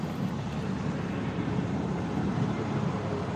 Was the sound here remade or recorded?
remade